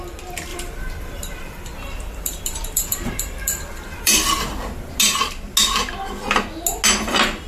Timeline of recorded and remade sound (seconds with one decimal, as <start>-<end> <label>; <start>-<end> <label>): 0.0-0.5 recorded; 0.5-5.0 remade; 5.0-7.5 recorded